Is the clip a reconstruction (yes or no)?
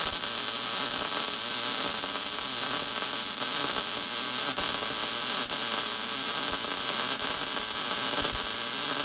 no